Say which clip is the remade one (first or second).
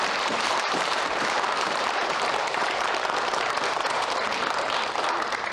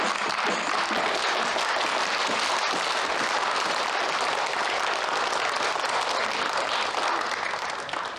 first